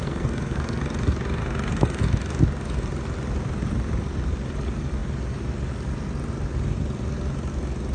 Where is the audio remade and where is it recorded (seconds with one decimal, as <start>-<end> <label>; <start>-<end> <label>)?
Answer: 0.0-0.8 remade; 0.8-1.4 recorded; 1.4-2.0 remade; 2.0-7.9 recorded